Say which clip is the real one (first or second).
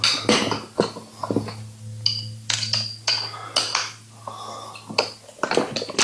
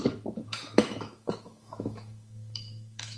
first